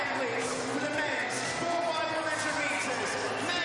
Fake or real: real